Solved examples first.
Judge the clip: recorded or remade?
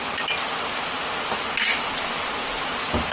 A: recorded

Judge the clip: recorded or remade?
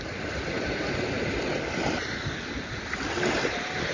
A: recorded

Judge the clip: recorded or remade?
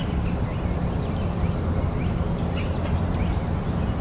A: recorded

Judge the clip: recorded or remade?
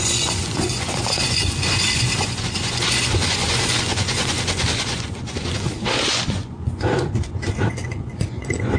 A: remade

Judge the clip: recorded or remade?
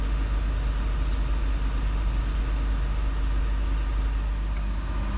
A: recorded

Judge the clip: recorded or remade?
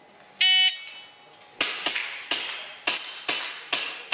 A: recorded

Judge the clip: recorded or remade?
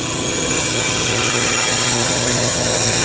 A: remade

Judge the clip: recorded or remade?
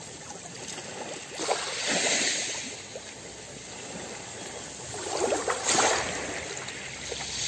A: recorded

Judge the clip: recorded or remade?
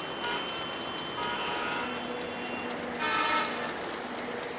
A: recorded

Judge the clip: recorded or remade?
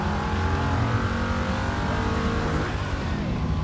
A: recorded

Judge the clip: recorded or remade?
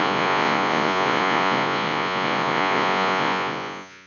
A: remade